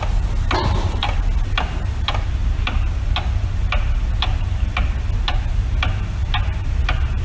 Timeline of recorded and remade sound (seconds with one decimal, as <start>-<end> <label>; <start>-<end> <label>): 0.0-0.6 recorded; 0.6-1.2 remade; 1.2-7.2 recorded